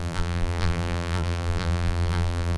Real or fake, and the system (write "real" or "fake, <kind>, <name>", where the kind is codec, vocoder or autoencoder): fake, vocoder, BigVGAN v2